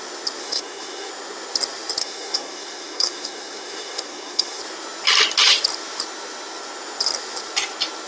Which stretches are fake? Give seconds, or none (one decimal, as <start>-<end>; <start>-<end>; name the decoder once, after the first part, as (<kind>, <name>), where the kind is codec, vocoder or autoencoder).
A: 0.4-1.1 (codec, SNAC); 2.0-4.6